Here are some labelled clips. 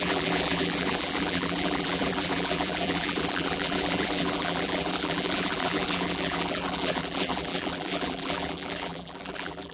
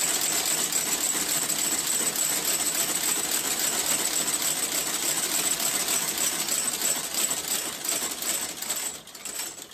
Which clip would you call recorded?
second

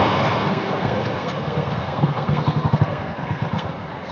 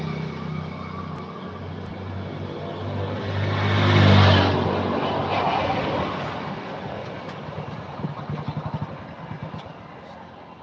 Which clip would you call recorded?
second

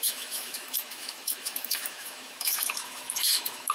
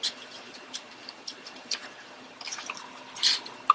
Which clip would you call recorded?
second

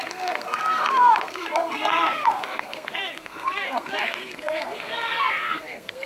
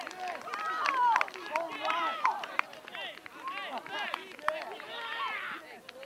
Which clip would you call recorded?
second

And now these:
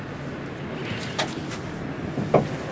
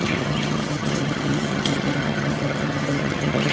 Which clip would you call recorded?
first